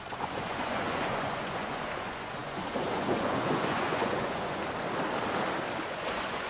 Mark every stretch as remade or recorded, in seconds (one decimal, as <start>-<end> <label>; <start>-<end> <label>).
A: 0.0-4.6 remade; 4.6-5.9 recorded; 5.9-6.5 remade